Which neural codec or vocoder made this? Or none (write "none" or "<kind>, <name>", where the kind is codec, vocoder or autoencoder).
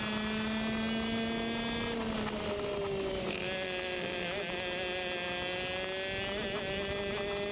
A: none